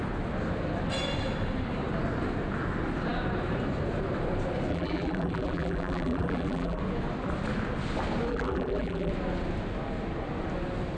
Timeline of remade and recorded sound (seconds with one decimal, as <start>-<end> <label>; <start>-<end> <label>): 0.0-4.7 recorded; 4.7-6.8 remade; 6.8-8.3 recorded; 8.3-9.1 remade; 9.1-11.0 recorded